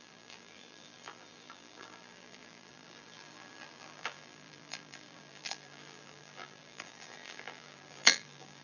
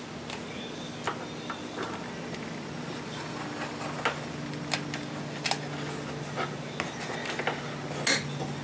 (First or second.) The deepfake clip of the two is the first